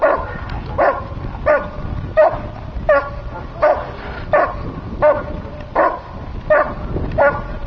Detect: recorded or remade recorded